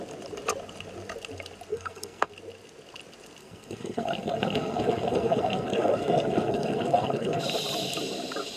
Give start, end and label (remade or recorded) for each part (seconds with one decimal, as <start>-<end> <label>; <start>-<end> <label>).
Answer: 0.0-1.7 recorded; 1.7-2.3 remade; 2.3-3.4 recorded; 3.4-7.4 remade; 7.4-8.6 recorded